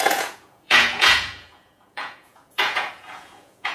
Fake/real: fake